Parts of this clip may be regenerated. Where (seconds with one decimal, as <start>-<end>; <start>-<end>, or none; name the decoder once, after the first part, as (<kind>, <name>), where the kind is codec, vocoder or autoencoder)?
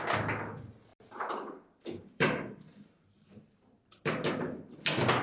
0.9-3.8 (vocoder, BigVGAN v2)